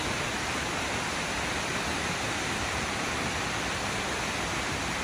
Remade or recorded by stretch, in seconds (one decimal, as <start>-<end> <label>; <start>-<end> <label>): 0.0-1.7 recorded; 1.7-3.7 remade; 3.7-5.0 recorded